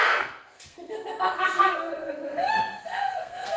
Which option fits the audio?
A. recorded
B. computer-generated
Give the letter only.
B